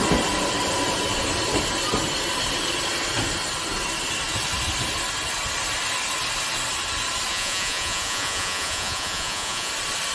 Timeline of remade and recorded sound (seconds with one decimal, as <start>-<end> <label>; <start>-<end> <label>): 0.0-7.3 recorded; 7.3-9.7 remade; 9.7-10.1 recorded